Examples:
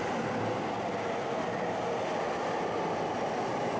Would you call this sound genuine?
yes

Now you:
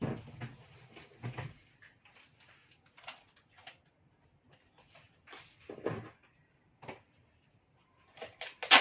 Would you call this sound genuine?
yes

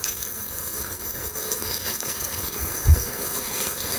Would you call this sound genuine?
no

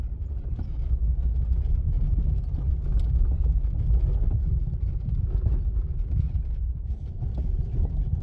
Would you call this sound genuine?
yes